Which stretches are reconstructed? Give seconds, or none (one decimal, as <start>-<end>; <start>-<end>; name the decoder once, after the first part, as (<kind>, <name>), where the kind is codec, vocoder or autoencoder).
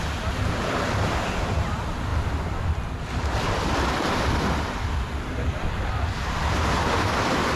none